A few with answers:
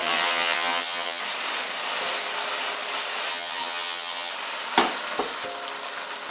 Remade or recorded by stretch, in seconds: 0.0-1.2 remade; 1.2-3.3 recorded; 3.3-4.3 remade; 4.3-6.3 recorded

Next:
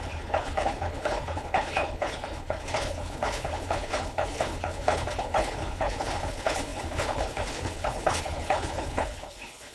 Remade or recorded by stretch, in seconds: 0.0-9.7 remade

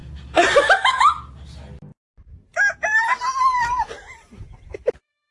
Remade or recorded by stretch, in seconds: 0.0-5.3 recorded

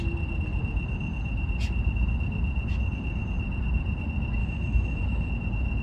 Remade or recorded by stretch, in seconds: 0.0-4.4 recorded; 4.4-5.3 remade; 5.3-5.8 recorded

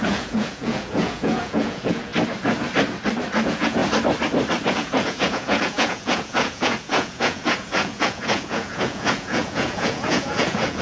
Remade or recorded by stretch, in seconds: 0.0-2.1 remade; 2.1-3.4 recorded; 3.4-3.8 remade; 3.8-4.7 recorded; 4.7-10.8 remade

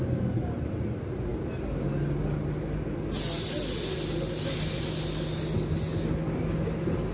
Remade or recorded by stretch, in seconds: 0.0-7.1 recorded